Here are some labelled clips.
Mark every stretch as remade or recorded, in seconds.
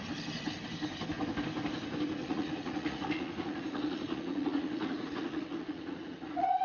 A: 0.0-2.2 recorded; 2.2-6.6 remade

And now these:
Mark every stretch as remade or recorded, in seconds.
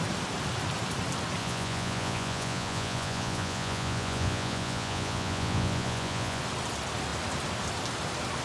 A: 0.0-1.4 recorded; 1.4-6.4 remade; 6.4-8.4 recorded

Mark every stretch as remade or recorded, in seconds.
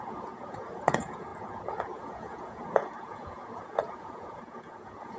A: 0.0-5.2 remade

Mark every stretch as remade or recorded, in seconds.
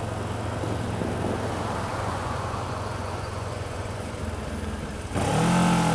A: 0.0-1.9 recorded; 1.9-4.1 remade; 4.1-5.9 recorded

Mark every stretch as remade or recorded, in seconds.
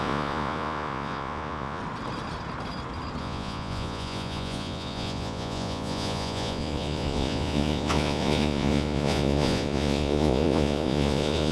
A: 0.0-1.8 remade; 1.8-3.2 recorded; 3.2-11.5 remade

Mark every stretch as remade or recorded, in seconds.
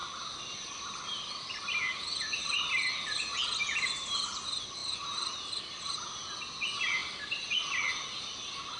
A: 0.0-8.8 recorded